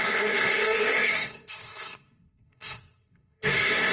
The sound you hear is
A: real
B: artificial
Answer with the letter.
B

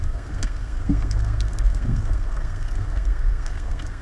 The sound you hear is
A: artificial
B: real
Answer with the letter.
A